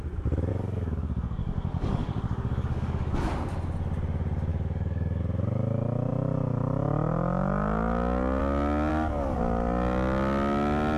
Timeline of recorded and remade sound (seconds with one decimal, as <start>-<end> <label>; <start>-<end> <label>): 0.0-0.5 recorded; 0.5-3.3 remade; 3.3-4.5 recorded; 4.5-5.2 remade; 5.2-8.9 recorded; 8.9-9.4 remade; 9.4-11.0 recorded